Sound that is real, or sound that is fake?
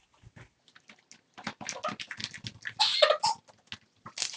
real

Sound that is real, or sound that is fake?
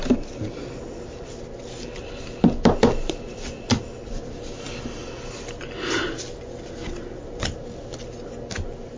real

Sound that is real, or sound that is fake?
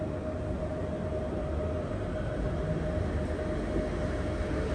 real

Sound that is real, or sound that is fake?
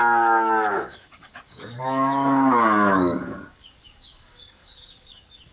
fake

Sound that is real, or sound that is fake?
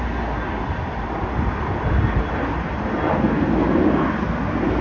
real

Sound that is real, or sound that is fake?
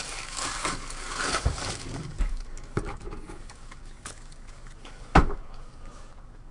fake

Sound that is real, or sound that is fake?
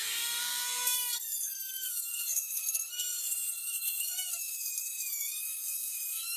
fake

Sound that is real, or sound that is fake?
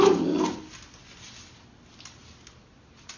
real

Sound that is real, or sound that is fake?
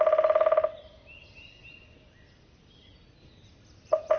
real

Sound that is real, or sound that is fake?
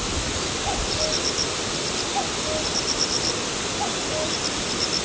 real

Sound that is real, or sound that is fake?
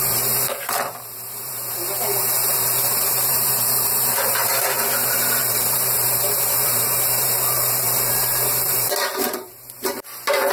fake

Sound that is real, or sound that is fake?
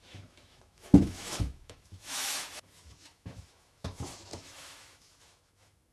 fake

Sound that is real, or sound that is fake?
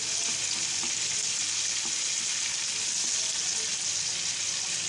real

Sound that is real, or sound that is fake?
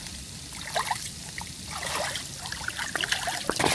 real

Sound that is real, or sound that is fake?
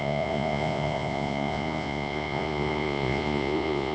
fake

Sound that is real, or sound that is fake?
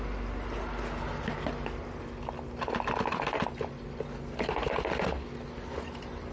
real